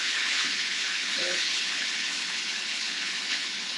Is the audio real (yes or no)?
no